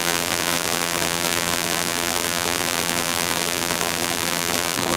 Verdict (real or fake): fake